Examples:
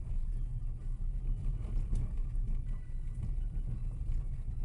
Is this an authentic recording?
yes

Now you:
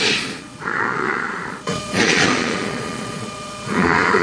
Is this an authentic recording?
no